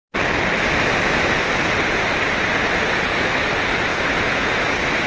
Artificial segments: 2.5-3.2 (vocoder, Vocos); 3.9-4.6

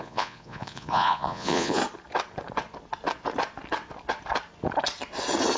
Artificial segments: 0.0-1.8 (vocoder, Vocos)

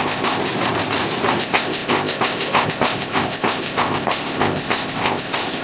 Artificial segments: 0.0-0.4 (codec, ZipCodec); 1.4-5.6

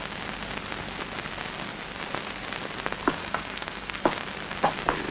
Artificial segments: 3.2-4.0 (codec, SNAC)

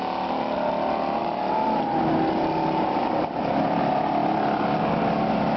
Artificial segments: none

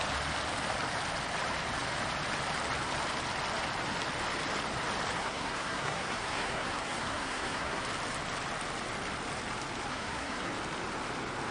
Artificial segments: 5.2-7.8 (codec, SNAC); 9.9-10.5